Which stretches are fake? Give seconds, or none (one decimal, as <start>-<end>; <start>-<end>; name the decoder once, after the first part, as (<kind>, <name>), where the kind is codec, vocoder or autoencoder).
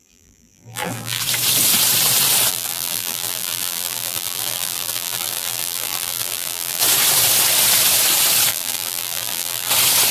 0.0-1.2 (vocoder, BigVGAN v2); 2.5-6.8; 8.5-9.7